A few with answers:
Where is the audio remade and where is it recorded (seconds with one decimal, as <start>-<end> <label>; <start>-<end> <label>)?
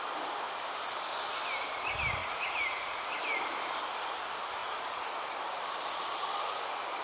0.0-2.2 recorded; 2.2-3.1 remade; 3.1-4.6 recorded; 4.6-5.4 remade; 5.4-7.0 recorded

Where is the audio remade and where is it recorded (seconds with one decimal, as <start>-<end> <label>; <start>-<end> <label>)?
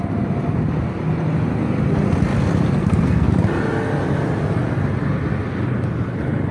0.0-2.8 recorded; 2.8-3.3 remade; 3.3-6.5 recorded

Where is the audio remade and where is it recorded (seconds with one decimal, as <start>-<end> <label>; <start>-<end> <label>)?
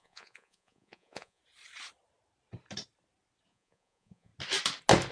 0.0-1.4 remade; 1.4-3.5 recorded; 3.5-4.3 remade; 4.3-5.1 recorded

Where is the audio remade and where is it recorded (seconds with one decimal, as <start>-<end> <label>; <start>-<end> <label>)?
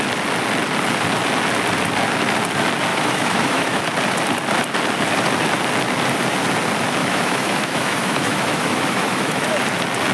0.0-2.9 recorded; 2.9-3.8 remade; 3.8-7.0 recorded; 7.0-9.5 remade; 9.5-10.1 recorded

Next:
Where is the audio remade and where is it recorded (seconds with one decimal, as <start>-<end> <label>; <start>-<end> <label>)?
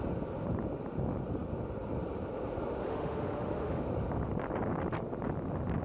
0.0-2.8 recorded; 2.8-3.8 remade; 3.8-5.8 recorded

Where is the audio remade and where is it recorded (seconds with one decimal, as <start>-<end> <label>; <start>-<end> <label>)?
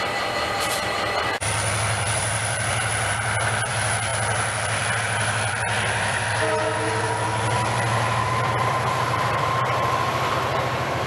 0.0-11.1 remade